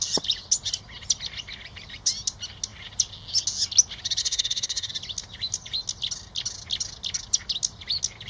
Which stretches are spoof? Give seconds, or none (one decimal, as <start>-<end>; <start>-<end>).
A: 4.2-4.9